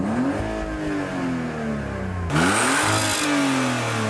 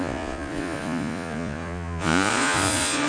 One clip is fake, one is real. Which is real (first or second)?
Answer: first